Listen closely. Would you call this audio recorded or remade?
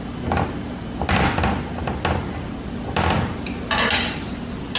recorded